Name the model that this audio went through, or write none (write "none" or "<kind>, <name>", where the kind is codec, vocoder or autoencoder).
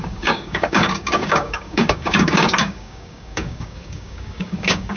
codec, DAC